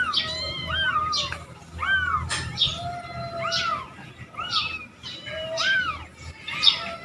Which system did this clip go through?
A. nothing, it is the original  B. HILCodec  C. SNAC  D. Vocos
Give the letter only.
A